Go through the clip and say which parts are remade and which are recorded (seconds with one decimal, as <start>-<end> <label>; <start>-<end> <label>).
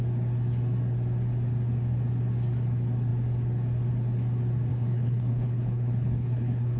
0.0-4.7 recorded; 4.7-6.8 remade